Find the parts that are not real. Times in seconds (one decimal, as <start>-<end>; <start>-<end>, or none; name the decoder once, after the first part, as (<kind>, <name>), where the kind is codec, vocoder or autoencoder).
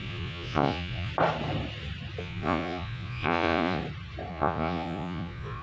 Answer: 0.0-1.1 (vocoder, Vocos); 2.2-3.8; 4.3-5.6